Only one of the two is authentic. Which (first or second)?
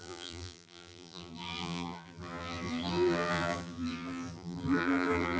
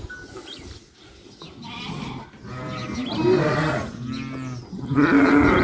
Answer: second